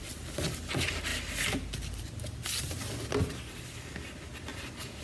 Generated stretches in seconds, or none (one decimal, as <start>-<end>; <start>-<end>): none